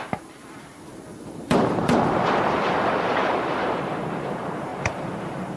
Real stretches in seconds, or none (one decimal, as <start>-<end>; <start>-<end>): none